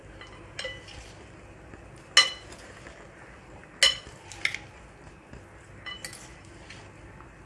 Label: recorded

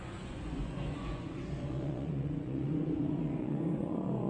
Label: remade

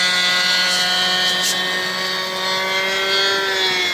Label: recorded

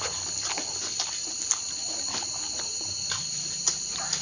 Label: recorded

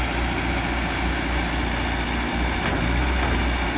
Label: recorded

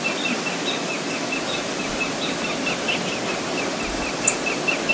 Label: recorded